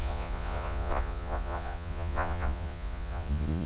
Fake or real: fake